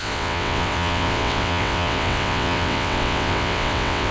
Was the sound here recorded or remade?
remade